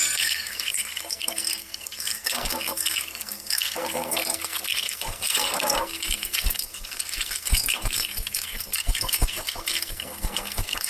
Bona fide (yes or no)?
no